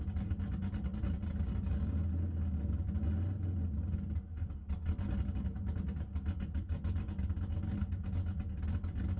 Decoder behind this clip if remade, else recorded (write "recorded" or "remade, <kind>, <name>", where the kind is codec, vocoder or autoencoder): recorded